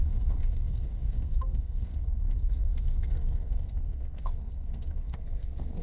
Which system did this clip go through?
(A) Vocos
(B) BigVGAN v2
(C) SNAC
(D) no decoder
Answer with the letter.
C